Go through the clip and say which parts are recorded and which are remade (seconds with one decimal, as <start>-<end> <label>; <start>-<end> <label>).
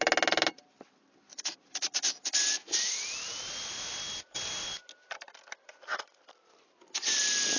0.0-7.6 recorded